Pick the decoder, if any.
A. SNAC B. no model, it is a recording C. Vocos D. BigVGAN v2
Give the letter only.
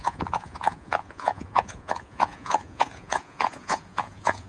C